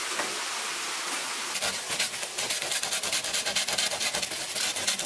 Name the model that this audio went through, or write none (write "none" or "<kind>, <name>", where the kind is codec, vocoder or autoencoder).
none